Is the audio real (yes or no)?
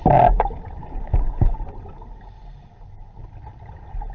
yes